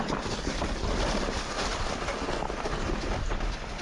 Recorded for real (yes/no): yes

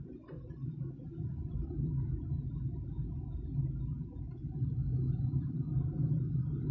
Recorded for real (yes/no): yes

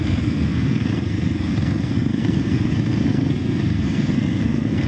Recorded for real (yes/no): no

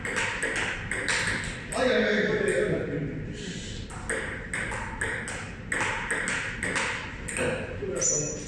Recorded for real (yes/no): yes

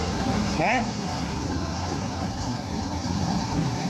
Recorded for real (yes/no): no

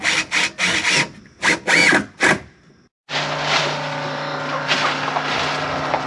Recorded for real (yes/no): yes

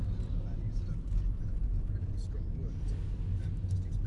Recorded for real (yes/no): yes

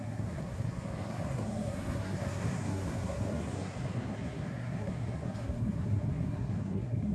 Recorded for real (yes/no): no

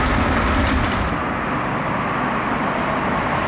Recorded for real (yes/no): yes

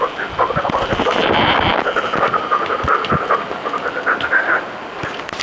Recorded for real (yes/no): yes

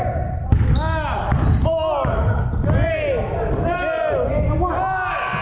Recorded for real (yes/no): yes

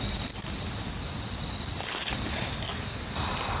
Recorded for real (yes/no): yes